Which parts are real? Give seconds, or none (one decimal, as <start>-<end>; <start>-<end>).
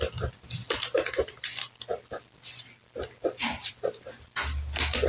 0.0-5.1